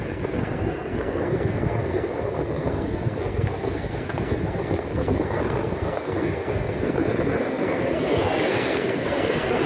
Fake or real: fake